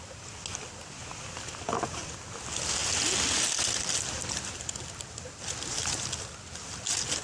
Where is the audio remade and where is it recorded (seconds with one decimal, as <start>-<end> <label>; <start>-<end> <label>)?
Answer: 0.0-7.2 recorded

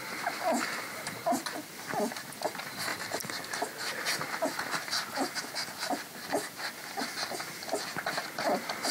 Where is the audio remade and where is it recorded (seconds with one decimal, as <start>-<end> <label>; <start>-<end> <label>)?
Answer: 0.0-8.9 recorded

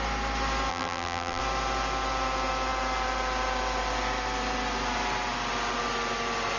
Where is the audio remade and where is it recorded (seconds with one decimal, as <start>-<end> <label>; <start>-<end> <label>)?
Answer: 0.0-0.7 recorded; 0.7-1.4 remade; 1.4-6.6 recorded

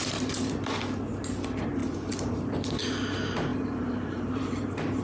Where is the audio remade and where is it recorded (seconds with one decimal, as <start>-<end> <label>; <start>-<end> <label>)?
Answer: 0.0-1.8 recorded; 1.8-2.5 remade; 2.5-3.5 recorded; 3.5-5.0 remade

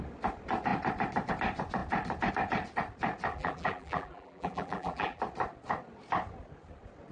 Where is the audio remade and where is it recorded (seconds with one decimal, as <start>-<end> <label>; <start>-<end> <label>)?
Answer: 0.0-3.3 recorded; 3.3-5.2 remade; 5.2-7.1 recorded

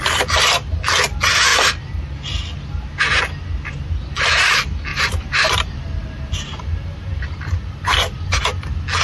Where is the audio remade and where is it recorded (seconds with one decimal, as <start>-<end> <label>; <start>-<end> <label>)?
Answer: 0.0-4.9 recorded; 4.9-8.4 remade; 8.4-9.0 recorded